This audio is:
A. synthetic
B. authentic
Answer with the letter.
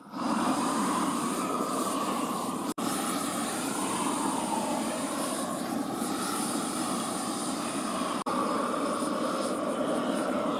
A